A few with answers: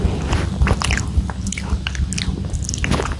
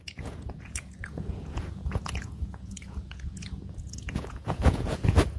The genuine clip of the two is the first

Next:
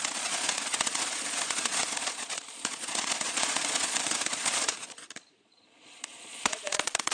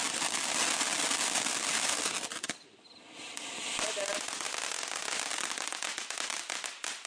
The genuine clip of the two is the second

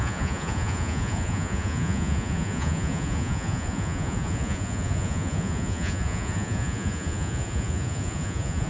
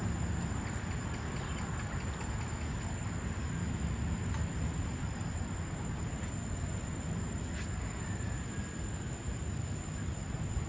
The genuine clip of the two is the second